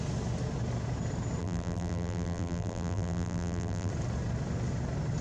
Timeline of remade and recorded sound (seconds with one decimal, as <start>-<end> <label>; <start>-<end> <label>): 0.0-1.4 recorded; 1.4-3.9 remade; 3.9-5.2 recorded